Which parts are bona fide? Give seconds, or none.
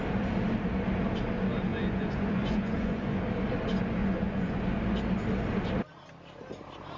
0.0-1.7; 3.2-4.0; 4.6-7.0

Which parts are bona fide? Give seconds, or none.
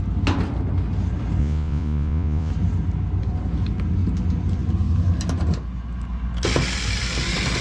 0.0-1.4; 2.5-7.6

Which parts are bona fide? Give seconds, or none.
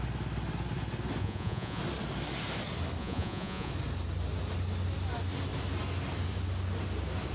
0.0-1.2; 1.8-3.0; 3.7-7.3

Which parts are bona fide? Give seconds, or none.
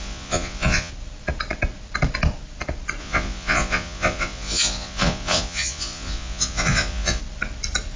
0.9-3.0; 7.2-8.0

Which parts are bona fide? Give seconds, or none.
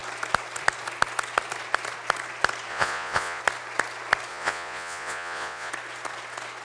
0.0-2.7; 3.4-4.3; 5.7-6.6